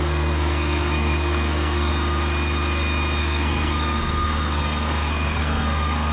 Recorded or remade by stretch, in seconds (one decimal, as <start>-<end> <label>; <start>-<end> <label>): 0.0-1.9 remade; 1.9-3.2 recorded; 3.2-6.1 remade